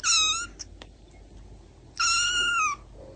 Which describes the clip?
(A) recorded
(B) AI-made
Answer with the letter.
A